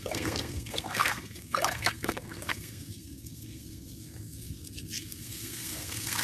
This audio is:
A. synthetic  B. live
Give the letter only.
A